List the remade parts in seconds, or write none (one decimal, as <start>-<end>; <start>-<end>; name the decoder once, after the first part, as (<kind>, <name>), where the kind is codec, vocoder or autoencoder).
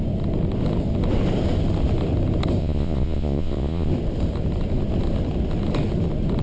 2.6-3.9 (vocoder, Vocos)